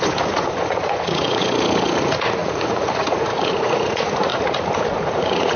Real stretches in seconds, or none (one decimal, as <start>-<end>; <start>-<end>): 1.4-2.0